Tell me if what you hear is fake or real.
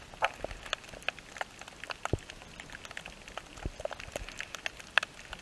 real